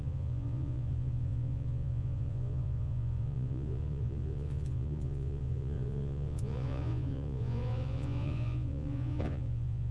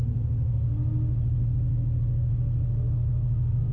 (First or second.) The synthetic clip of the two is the first